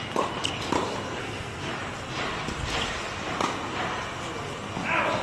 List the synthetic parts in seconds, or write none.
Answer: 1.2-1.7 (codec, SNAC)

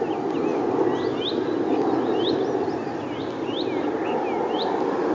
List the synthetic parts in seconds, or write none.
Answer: none

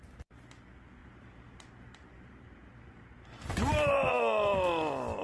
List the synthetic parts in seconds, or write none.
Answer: 1.0-4.1 (vocoder, BigVGAN v2)